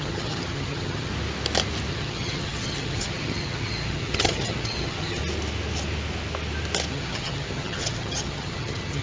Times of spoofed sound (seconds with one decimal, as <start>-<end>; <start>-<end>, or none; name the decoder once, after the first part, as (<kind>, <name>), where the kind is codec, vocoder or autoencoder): 0.0-1.1 (vocoder, HiFi-GAN); 1.9-5.2; 6.9-9.0